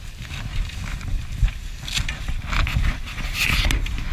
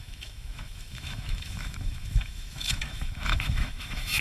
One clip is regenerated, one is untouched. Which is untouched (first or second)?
first